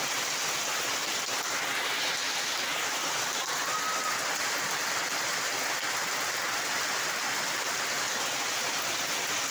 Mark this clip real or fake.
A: real